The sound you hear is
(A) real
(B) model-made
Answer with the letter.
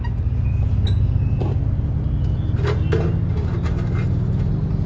A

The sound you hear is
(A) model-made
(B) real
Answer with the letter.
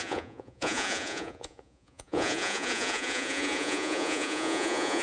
A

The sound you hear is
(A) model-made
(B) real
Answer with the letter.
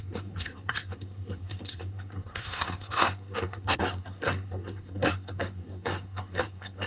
A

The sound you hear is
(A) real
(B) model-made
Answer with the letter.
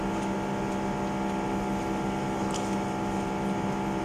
A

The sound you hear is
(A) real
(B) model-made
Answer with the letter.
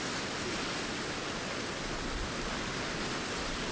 A